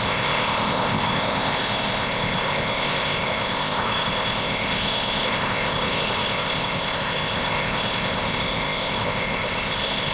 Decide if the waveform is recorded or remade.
remade